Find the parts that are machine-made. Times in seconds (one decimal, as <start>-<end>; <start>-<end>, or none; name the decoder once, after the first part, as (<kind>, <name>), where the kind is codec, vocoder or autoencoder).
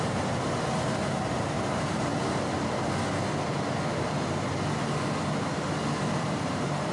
0.0-2.1 (vocoder, BigVGAN v2); 6.2-6.9